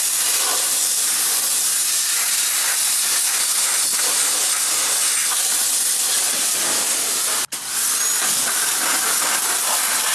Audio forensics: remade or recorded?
recorded